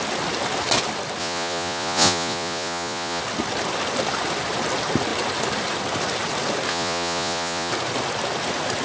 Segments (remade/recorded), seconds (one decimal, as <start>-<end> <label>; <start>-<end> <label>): 0.0-1.2 recorded; 1.2-3.2 remade; 3.2-6.7 recorded; 6.7-7.7 remade; 7.7-8.8 recorded